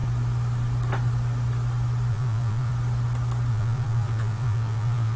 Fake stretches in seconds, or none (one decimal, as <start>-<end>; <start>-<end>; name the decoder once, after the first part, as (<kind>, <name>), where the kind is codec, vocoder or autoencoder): 2.1-2.7 (vocoder, Vocos); 3.5-5.2

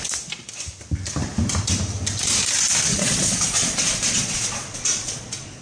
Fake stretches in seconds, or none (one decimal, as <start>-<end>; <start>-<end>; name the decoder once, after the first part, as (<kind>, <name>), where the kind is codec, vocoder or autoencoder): 2.9-5.6 (vocoder, Vocos)

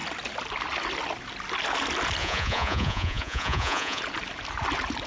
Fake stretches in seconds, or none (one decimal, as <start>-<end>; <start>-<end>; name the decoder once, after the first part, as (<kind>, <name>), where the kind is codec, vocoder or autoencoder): 2.2-4.0 (vocoder, Vocos)

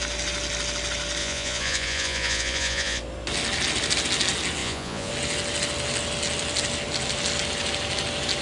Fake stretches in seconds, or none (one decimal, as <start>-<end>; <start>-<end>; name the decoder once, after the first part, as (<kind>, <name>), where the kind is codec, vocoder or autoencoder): 1.2-3.0 (vocoder, Vocos); 4.6-5.1

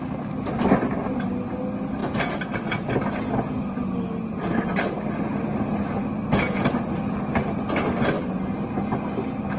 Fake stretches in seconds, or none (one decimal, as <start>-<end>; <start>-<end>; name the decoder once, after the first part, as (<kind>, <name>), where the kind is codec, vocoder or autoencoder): none

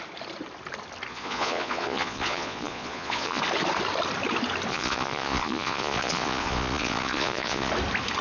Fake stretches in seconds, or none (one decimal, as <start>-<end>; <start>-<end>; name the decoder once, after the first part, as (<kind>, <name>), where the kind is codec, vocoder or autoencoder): 1.1-3.4 (vocoder, Vocos); 4.7-7.7

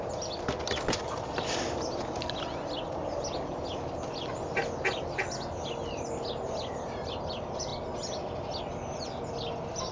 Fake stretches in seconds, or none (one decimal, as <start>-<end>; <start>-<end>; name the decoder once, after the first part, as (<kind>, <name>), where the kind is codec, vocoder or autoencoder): none

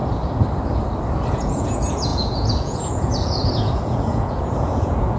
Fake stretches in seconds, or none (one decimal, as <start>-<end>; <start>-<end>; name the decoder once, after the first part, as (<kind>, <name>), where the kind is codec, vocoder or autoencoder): 1.3-5.2 (vocoder, Vocos)